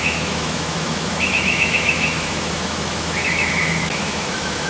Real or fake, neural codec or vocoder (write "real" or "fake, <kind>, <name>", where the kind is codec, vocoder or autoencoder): fake, autoencoder, DAC-VAE